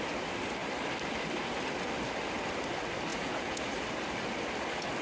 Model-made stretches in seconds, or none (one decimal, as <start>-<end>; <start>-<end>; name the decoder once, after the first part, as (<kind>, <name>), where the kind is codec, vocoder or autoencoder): 3.1-3.6 (vocoder, Vocos)